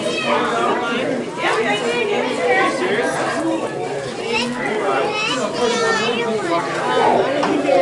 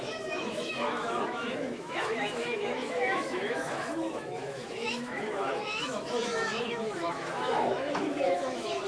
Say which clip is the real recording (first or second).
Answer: first